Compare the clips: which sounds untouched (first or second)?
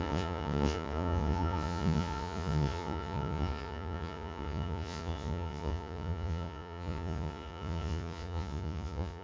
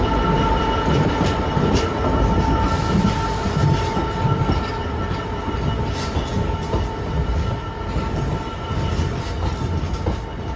second